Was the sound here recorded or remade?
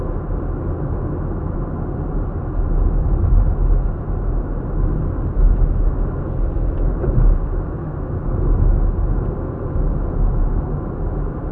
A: recorded